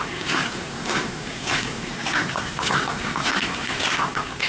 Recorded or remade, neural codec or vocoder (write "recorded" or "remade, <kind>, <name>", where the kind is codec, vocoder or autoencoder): remade, codec, SNAC